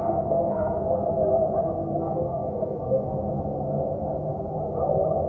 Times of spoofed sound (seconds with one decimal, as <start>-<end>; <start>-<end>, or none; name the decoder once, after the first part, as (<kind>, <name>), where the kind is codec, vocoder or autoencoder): 0.0-1.1 (codec, SNAC); 1.6-3.4